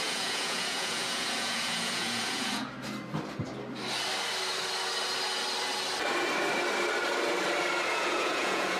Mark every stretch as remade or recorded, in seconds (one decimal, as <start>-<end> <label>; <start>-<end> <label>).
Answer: 0.0-2.7 remade; 2.7-7.9 recorded; 7.9-8.8 remade